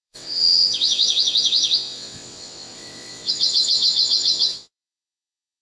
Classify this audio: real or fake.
fake